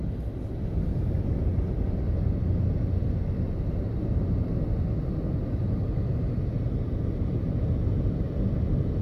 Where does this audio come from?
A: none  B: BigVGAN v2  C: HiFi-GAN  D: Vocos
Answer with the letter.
A